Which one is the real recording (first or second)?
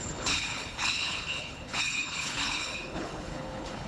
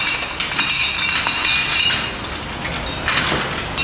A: second